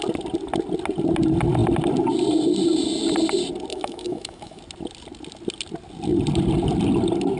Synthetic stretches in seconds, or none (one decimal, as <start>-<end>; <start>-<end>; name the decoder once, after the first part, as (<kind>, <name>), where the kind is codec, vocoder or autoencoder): 3.7-4.6 (autoencoder, DAC-VAE)